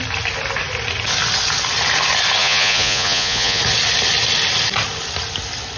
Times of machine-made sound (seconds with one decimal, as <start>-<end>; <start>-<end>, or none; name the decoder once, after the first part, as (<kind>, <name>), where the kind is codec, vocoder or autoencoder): 2.4-3.6 (vocoder, Vocos)